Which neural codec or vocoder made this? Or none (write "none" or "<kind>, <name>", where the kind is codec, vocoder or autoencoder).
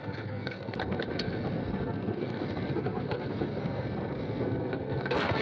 codec, SNAC